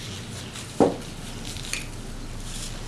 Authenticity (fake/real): real